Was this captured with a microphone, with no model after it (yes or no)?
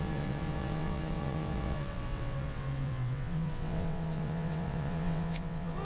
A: no